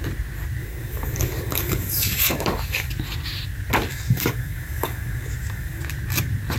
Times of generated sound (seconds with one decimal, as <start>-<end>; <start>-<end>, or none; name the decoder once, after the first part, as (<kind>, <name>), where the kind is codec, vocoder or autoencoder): 0.6-2.9 (codec, DAC); 3.9-5.8